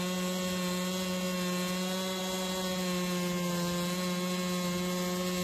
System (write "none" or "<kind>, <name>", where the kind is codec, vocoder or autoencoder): none